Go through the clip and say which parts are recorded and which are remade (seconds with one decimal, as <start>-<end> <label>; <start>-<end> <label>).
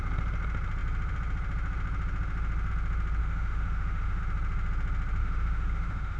0.0-3.2 recorded; 3.2-4.2 remade; 4.2-5.2 recorded; 5.2-6.2 remade